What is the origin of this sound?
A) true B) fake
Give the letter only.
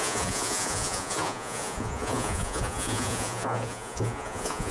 B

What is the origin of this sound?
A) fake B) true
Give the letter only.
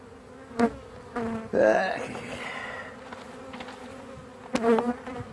B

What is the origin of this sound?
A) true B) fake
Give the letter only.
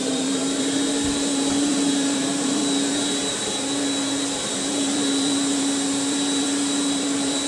B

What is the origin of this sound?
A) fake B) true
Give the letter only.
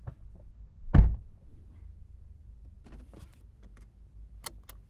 B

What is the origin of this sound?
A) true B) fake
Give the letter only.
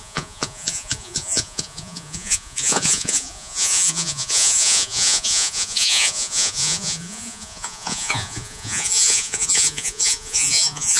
B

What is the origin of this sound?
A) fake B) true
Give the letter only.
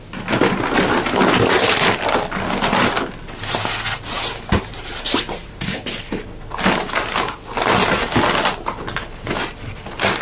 B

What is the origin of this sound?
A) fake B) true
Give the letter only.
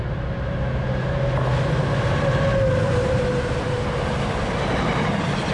B